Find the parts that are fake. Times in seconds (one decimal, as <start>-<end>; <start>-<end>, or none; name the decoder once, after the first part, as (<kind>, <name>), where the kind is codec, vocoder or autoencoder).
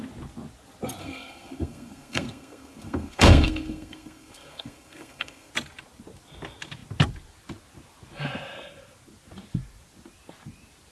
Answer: 1.0-5.5 (codec, SNAC)